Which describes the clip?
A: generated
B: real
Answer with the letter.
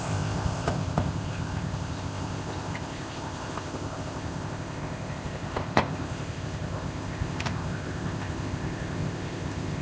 A